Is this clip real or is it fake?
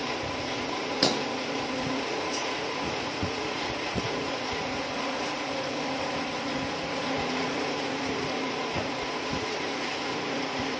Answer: fake